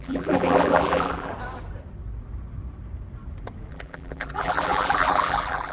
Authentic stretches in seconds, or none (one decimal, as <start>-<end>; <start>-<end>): 1.3-3.7